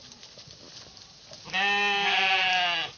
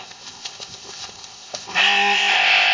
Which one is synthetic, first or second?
second